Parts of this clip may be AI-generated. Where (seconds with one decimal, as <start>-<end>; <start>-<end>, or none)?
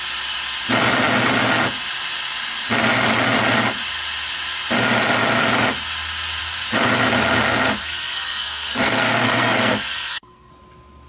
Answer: 7.8-10.5